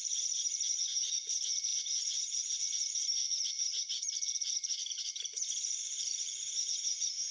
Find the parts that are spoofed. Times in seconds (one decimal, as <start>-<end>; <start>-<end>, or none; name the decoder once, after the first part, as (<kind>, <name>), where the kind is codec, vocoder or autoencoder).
none